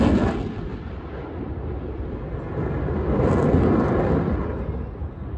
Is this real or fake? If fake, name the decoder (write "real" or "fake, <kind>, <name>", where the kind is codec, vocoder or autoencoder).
real